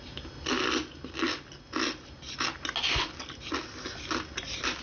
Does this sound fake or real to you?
real